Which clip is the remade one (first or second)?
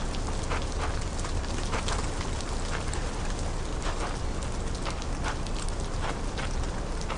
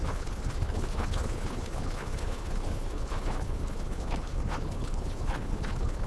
second